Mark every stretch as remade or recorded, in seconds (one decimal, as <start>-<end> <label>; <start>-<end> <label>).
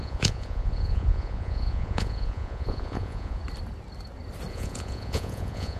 0.0-3.4 remade; 3.4-4.5 recorded; 4.5-5.8 remade